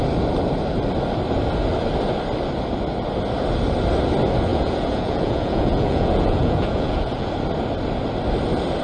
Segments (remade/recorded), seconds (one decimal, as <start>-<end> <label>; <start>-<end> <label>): 0.0-4.5 recorded; 4.5-7.3 remade; 7.3-8.8 recorded